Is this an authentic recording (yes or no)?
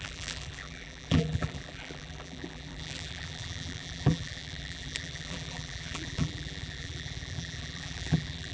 no